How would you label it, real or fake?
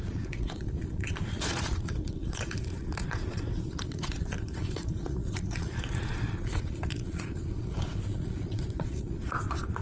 fake